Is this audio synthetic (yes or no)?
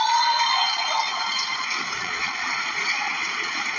yes